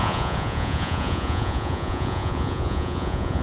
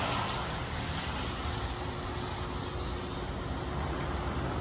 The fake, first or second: first